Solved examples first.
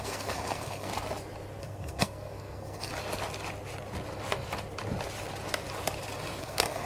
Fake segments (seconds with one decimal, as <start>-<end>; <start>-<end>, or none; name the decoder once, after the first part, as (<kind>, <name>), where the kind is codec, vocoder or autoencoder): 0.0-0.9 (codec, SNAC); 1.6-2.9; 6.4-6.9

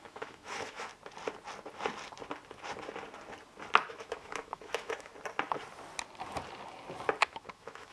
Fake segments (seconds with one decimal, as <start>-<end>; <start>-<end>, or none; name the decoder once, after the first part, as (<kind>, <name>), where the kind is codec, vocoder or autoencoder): 0.0-0.9 (autoencoder, DAC-VAE); 3.9-5.1; 7.2-7.9

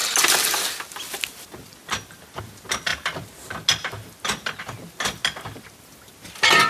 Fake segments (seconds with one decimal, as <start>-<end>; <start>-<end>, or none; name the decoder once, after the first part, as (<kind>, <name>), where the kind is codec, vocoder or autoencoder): none